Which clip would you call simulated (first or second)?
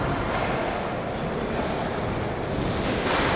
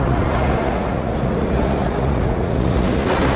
second